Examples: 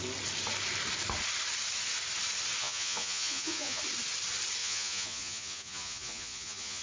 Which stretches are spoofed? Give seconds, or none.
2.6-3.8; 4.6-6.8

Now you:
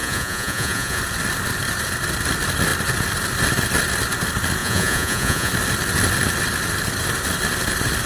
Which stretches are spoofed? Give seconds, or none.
0.0-1.0; 4.6-5.5

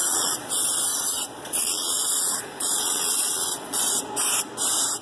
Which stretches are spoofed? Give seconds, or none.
0.0-0.5; 0.9-3.9

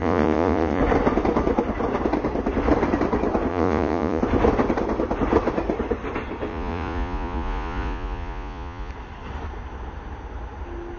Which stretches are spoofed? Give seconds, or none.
0.0-0.8; 3.5-4.2; 6.5-8.9

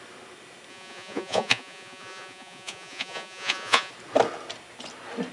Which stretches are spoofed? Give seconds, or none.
0.7-3.9

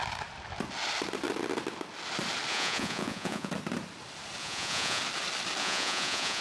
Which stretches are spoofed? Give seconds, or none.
2.5-3.5; 4.4-5.0; 5.6-6.4

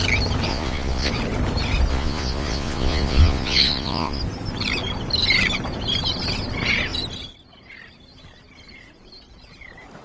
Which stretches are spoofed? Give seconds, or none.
0.5-1.1; 1.9-4.2